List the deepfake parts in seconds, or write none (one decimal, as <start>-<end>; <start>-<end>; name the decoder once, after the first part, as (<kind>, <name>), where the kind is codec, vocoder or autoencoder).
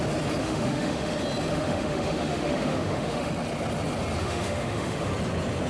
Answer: 0.4-1.1 (autoencoder, DAC-VAE); 1.5-3.3; 4.2-5.1